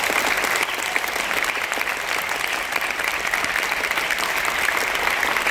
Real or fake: fake